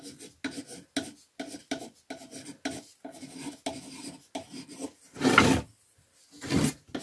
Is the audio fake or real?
real